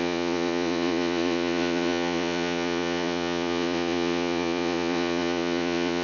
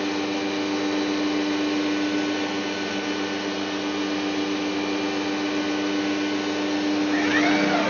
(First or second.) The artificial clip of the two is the first